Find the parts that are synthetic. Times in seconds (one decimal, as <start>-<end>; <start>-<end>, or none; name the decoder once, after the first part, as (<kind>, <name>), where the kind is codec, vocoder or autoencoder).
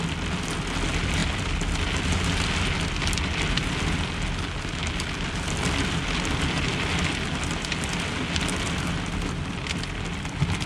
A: none